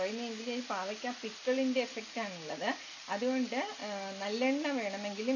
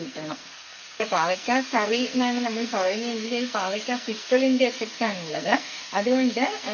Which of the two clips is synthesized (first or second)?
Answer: second